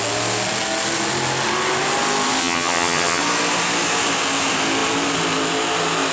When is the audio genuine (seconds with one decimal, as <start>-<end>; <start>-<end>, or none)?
0.0-2.4; 3.2-6.1